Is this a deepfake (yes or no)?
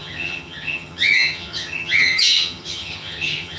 yes